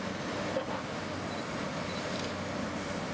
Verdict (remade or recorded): recorded